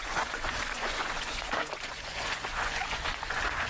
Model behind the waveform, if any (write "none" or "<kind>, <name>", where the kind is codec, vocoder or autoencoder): vocoder, Vocos